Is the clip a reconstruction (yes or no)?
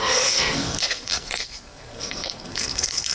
yes